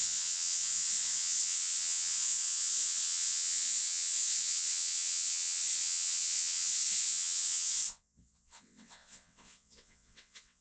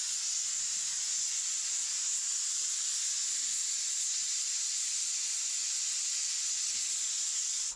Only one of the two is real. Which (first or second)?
second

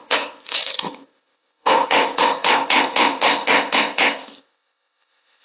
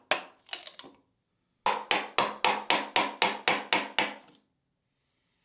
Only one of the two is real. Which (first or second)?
second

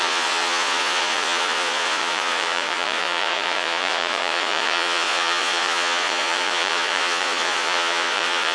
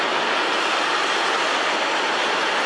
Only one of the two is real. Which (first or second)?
second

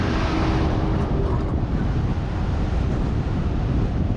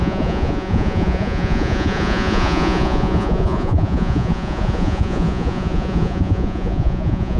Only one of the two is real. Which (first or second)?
first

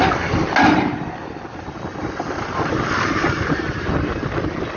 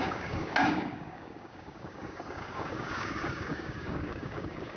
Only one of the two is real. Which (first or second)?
first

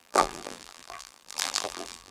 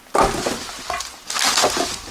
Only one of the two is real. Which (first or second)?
second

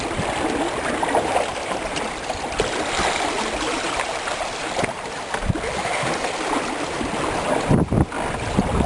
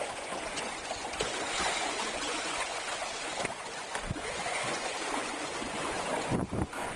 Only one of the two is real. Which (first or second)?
first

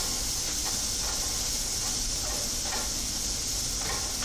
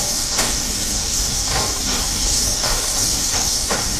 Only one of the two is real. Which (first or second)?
first